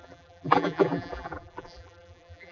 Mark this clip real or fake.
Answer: fake